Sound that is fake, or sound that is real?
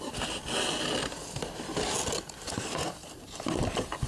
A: real